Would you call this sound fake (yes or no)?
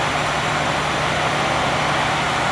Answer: no